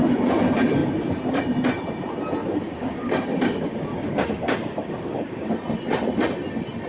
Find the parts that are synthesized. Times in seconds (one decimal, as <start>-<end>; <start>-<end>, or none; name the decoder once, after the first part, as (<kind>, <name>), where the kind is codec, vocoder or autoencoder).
2.4-5.5 (codec, DAC)